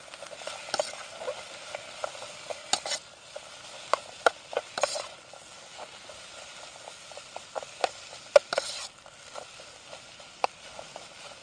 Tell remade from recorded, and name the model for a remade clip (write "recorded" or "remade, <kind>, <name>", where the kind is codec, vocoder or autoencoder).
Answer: recorded